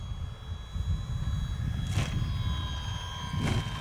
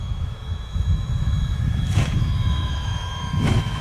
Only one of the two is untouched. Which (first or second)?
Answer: first